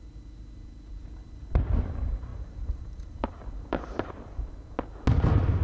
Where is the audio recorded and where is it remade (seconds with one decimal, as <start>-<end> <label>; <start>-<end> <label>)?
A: 0.0-2.3 recorded; 2.3-4.4 remade; 4.4-5.6 recorded